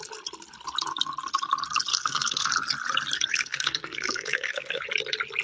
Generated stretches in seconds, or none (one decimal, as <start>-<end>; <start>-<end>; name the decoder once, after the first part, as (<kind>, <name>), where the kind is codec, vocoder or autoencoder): 1.9-2.5 (codec, SNAC); 3.3-4.8